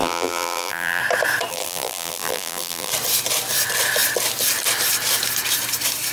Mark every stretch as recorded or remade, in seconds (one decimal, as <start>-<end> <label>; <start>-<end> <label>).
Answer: 0.0-1.0 remade; 1.0-1.5 recorded; 1.5-2.9 remade; 2.9-6.1 recorded

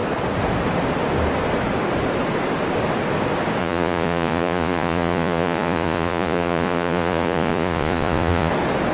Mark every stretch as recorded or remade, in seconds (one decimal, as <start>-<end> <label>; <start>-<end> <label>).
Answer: 0.0-3.6 recorded; 3.6-8.5 remade; 8.5-8.9 recorded

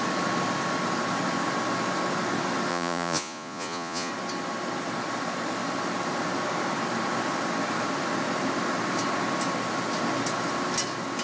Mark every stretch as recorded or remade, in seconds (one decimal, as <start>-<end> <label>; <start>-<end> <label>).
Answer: 0.0-2.7 recorded; 2.7-4.1 remade; 4.1-11.2 recorded

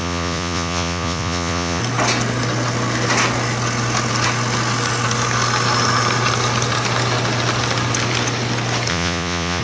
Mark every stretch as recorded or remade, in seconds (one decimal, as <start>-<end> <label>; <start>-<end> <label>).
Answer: 0.0-1.8 remade; 1.8-8.9 recorded; 8.9-9.6 remade

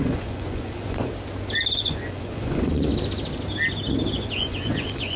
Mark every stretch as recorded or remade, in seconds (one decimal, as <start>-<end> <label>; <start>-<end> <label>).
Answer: 0.0-1.1 remade; 1.1-1.7 recorded; 1.7-2.9 remade; 2.9-4.1 recorded; 4.1-5.2 remade